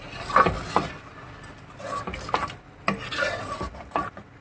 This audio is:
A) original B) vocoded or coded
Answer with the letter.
A